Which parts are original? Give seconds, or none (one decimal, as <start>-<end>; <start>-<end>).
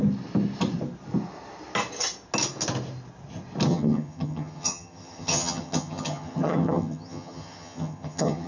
0.0-3.7